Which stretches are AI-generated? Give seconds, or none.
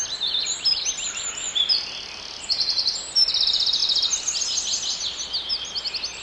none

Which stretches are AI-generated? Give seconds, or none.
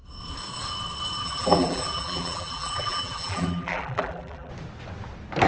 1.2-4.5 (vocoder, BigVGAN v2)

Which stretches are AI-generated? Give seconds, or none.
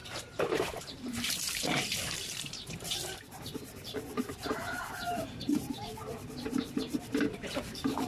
0.0-8.1 (vocoder, BigVGAN v2)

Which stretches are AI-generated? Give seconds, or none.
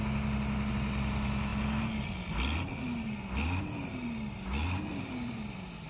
0.7-1.5 (vocoder, BigVGAN v2); 4.9-5.9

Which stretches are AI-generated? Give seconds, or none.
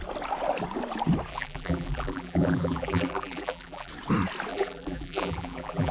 1.3-3.9 (vocoder, BigVGAN v2); 4.5-5.9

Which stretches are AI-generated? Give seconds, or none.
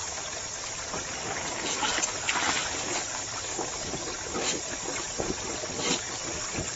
4.9-5.5 (vocoder, BigVGAN v2)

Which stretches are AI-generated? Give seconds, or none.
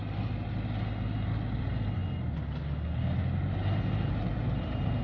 1.6-2.0 (vocoder, BigVGAN v2); 4.1-5.0